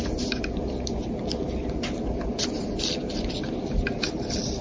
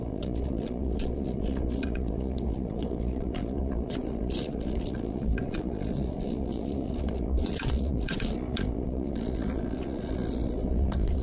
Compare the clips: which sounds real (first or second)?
first